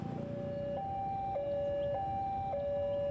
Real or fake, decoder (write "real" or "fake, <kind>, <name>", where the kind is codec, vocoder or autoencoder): real